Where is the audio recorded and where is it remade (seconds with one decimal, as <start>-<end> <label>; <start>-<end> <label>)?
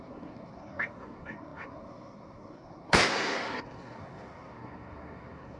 0.0-5.6 remade